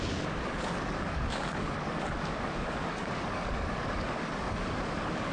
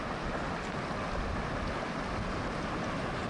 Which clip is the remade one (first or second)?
first